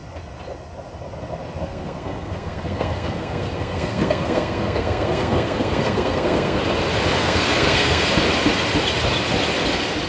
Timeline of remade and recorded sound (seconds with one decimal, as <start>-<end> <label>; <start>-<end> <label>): 0.0-1.6 recorded; 1.6-6.6 remade; 6.6-7.2 recorded; 7.2-8.1 remade; 8.1-10.1 recorded